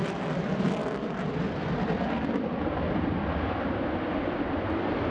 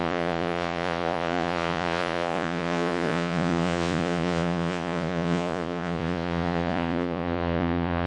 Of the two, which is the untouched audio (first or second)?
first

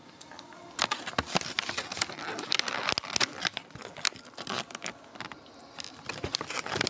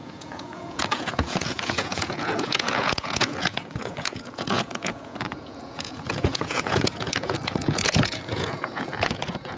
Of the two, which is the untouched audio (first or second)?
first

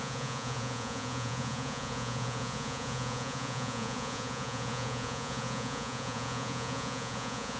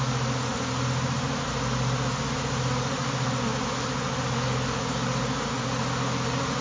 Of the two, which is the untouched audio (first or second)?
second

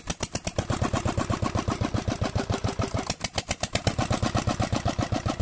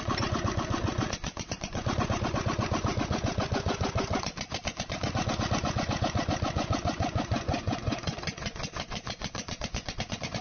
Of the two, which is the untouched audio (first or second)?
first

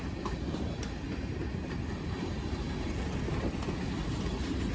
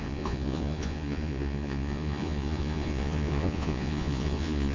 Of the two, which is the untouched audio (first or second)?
first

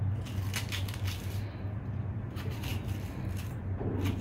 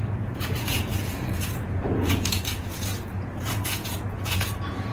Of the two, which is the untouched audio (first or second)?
first